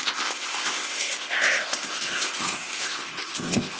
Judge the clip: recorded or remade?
remade